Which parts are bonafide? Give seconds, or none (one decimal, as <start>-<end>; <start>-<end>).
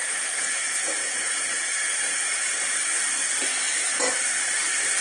3.0-5.0